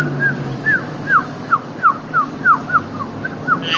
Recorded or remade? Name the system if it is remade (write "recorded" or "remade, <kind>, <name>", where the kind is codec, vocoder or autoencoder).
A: recorded